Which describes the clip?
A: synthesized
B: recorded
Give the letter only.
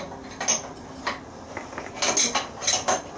B